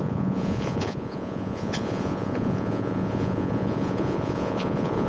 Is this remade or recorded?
remade